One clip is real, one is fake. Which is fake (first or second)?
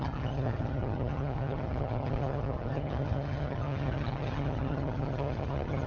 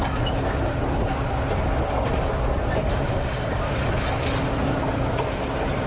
first